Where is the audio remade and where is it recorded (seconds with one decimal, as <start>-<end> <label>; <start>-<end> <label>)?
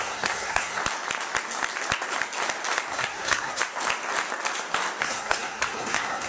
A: 0.0-0.8 remade; 0.8-2.9 recorded; 2.9-3.6 remade; 3.6-5.0 recorded; 5.0-6.3 remade